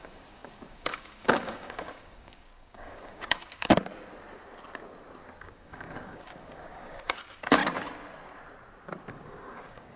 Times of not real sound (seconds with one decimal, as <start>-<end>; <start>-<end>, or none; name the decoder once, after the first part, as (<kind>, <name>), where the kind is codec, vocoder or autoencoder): 0.0-3.7 (codec, DAC); 5.4-7.6; 9.1-10.0